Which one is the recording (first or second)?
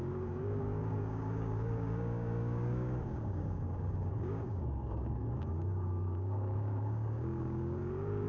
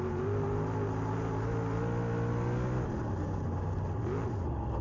second